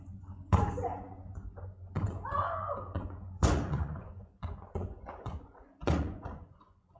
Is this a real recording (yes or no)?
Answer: no